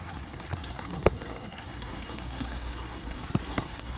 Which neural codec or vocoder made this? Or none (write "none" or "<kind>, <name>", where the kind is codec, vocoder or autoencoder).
codec, SNAC